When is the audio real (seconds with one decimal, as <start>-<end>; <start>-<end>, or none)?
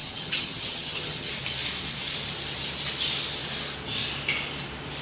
1.3-5.0